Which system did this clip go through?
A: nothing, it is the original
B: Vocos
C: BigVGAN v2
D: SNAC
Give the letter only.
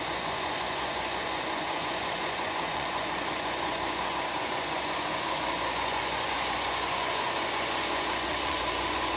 B